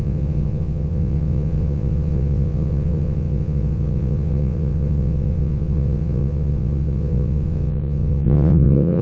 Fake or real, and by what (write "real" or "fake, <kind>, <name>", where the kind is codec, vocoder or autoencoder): fake, vocoder, WaveNeXt